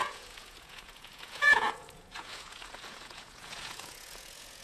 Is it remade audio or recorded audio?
remade